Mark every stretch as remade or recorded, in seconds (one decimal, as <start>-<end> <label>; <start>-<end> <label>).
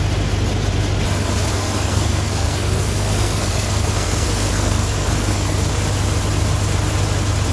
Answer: 0.0-1.5 recorded; 1.5-5.7 remade; 5.7-7.5 recorded